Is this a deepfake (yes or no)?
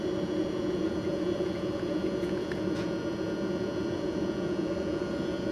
yes